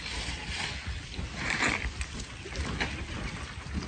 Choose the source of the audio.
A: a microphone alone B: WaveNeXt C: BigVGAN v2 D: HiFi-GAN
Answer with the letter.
A